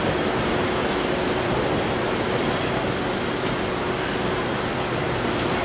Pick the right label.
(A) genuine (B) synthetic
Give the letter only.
A